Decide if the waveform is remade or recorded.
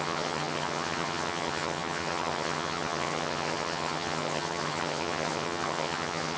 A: remade